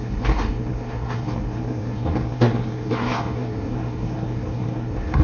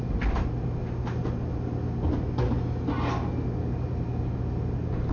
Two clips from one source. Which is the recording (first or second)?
second